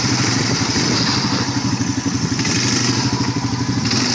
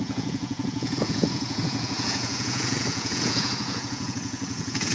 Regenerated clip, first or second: second